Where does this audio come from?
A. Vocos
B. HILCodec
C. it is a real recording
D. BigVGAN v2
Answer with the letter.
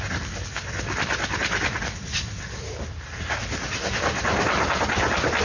C